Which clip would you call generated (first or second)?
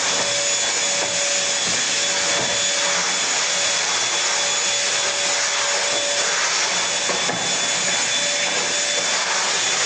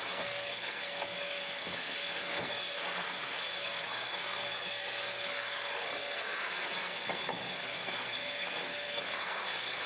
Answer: second